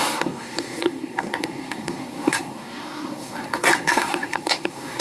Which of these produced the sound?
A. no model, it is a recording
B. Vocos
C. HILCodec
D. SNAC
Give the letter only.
D